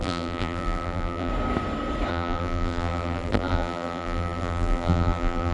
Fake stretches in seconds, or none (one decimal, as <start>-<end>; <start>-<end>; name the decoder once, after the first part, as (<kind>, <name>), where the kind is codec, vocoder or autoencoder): 0.0-1.3 (vocoder, BigVGAN v2); 2.1-5.5